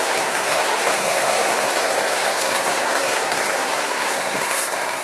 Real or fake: fake